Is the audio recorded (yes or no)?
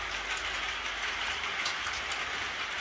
yes